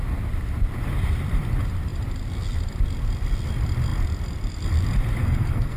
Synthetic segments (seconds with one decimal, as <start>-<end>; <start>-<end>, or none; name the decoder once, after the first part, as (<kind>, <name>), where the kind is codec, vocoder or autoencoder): 5.2-5.8 (codec, SNAC)